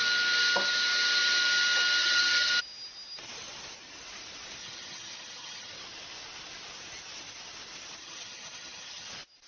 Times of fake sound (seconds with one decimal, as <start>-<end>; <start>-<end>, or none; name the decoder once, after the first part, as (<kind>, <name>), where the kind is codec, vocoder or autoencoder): 2.0-2.5 (vocoder, HiFi-GAN); 4.6-5.7; 8.0-9.1